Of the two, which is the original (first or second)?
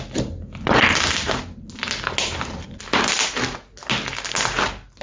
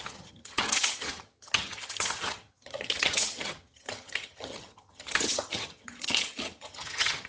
first